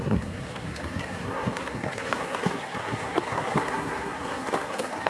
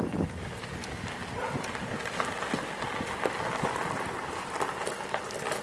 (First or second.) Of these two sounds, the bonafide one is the second